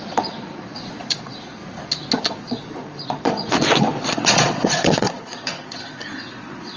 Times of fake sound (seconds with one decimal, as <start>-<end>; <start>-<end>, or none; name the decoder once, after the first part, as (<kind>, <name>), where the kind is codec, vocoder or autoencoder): 0.0-1.6 (vocoder, Vocos); 2.2-6.8